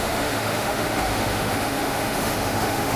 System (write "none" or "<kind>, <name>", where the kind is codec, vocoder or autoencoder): autoencoder, DAC-VAE